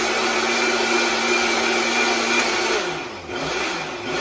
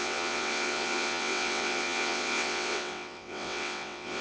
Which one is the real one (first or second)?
first